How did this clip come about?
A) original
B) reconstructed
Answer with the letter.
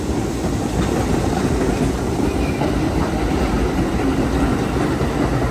A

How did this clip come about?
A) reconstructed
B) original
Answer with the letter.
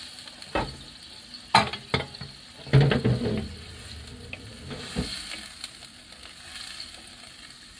B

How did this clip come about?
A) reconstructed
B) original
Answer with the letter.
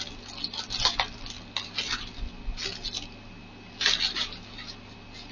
B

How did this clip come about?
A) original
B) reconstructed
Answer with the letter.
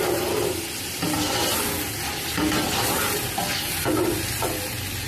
A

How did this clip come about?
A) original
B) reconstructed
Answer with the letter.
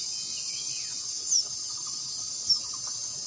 A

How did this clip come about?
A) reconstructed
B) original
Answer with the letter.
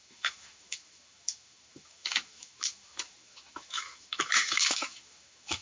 A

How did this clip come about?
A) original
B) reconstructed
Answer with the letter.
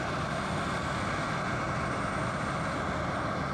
A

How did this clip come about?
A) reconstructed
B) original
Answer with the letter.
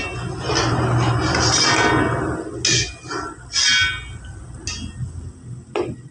B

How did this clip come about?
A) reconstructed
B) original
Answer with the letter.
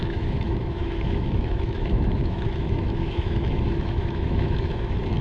A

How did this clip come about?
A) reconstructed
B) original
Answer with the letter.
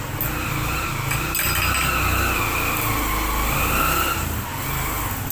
B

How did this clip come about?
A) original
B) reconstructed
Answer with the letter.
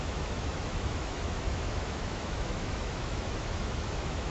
B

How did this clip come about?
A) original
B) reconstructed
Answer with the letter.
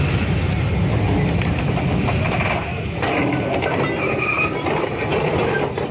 A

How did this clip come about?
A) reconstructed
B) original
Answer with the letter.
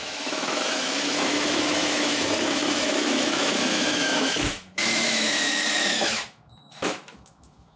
A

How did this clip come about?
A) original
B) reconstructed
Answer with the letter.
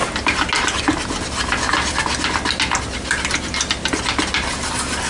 A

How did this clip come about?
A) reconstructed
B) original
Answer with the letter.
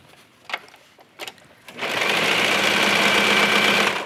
B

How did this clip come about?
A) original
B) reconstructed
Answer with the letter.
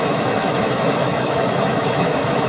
B